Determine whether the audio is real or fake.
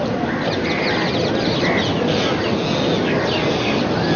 real